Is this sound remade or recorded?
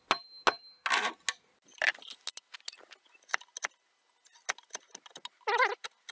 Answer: recorded